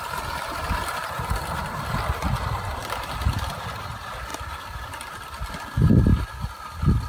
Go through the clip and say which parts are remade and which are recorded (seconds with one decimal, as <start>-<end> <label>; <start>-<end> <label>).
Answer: 0.0-2.8 remade; 2.8-3.4 recorded; 3.4-6.1 remade; 6.1-7.1 recorded